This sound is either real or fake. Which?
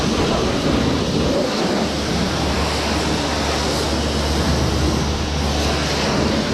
real